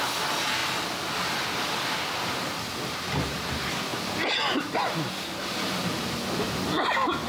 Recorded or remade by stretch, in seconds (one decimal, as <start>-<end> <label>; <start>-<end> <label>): 0.0-7.3 recorded